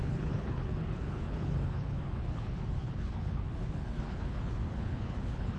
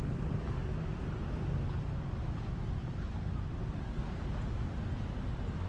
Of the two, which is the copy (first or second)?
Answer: first